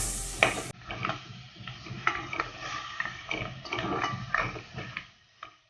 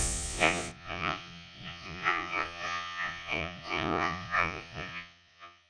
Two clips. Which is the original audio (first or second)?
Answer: first